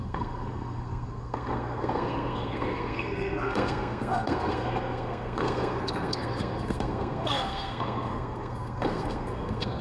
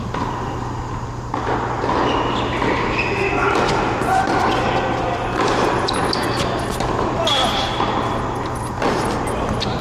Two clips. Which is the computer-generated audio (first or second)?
first